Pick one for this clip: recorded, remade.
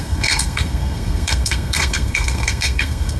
remade